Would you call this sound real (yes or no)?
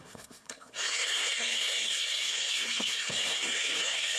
no